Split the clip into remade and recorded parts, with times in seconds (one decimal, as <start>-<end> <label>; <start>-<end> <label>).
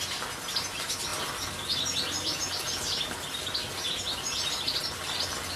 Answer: 0.0-5.6 recorded